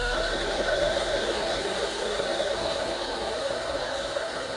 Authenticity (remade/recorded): remade